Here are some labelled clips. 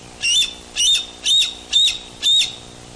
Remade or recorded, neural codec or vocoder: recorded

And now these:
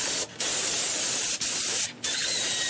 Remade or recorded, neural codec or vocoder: recorded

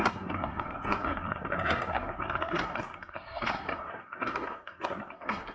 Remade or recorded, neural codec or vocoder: remade, codec, SNAC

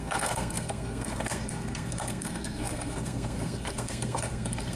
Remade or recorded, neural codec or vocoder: remade, codec, SNAC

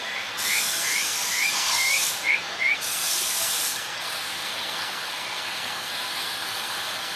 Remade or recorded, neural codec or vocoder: remade, codec, SNAC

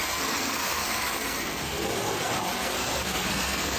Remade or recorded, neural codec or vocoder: remade, codec, SNAC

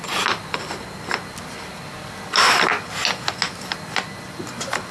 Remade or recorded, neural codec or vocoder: recorded